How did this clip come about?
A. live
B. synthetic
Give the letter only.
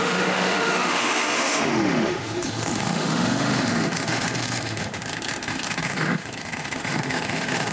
B